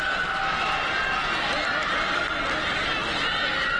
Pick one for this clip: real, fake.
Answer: real